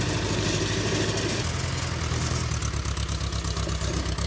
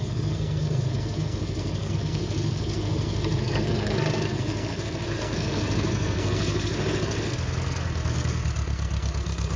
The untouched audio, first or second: first